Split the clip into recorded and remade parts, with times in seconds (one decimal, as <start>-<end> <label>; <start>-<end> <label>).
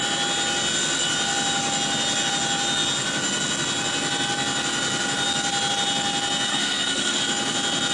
0.0-6.5 recorded; 6.5-7.2 remade; 7.2-7.9 recorded